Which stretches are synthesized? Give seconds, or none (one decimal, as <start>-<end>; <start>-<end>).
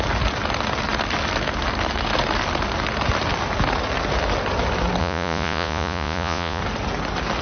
5.0-6.6